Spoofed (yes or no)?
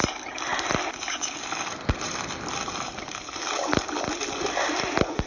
no